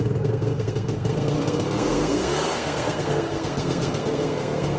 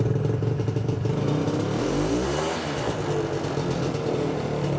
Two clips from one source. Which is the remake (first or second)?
first